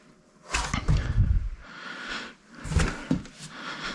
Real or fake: real